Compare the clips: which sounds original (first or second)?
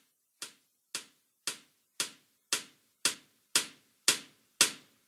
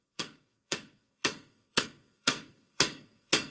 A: first